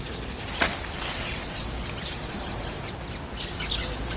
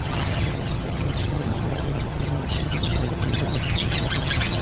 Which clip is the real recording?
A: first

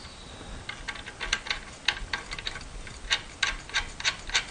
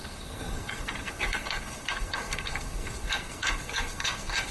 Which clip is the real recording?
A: first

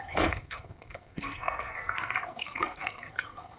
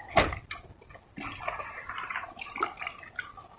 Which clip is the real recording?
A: second